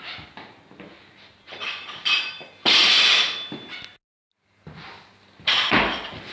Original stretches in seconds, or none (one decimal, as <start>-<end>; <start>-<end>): 0.0-6.3